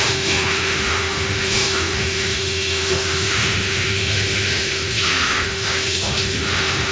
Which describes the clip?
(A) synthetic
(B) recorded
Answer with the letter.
A